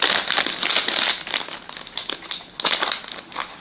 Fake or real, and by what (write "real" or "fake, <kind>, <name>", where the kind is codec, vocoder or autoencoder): real